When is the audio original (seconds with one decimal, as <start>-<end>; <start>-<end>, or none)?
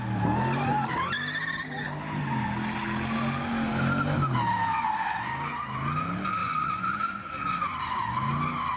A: 0.0-6.4; 8.0-8.8